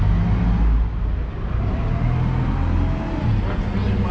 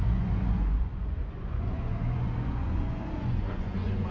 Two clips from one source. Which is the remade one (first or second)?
second